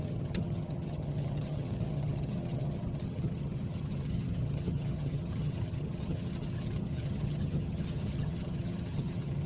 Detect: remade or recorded remade